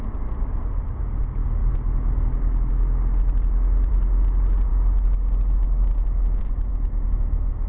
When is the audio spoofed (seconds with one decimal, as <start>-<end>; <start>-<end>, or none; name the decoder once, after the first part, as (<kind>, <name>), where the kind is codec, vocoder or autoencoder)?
none